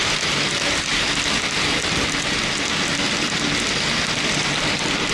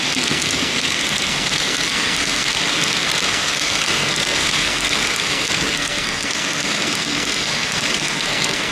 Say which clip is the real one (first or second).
first